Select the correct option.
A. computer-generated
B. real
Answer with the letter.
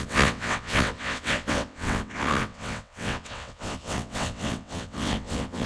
A